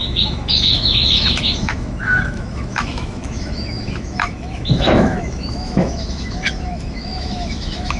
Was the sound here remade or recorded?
remade